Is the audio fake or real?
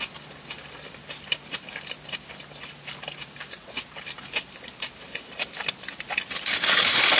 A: real